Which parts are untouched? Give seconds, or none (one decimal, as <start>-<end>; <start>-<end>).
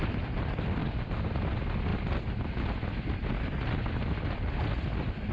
0.0-5.3